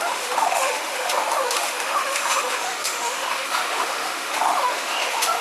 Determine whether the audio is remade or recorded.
remade